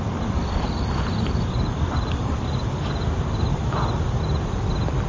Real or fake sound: real